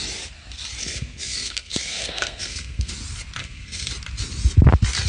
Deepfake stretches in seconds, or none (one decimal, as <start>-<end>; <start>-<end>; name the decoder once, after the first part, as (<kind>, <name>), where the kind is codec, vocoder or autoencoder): 0.8-2.9 (codec, SNAC); 3.4-3.9